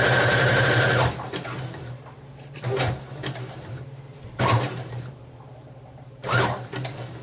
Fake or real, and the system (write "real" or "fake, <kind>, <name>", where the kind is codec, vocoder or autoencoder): fake, vocoder, BigVGAN v2